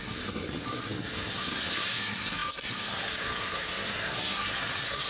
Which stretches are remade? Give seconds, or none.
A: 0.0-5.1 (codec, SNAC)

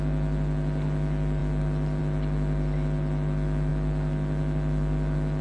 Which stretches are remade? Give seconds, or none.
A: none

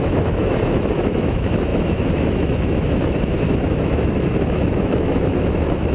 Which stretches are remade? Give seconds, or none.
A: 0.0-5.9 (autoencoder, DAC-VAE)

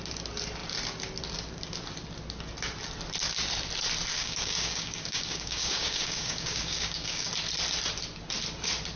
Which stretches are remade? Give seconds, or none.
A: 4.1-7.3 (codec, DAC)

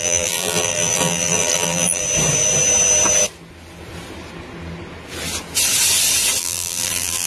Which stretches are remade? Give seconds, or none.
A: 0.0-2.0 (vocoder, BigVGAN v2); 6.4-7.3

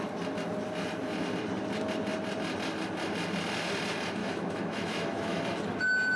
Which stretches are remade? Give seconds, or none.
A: 4.2-5.4 (autoencoder, DAC-VAE)

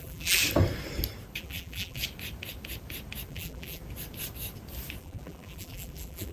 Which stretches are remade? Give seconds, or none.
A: 0.0-0.4 (vocoder, BigVGAN v2); 1.4-2.0; 3.3-3.8; 5.0-6.3